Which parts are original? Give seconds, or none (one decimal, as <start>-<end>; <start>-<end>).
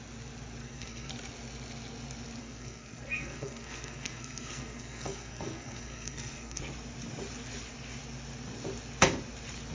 0.0-0.6; 1.1-2.4; 6.6-9.7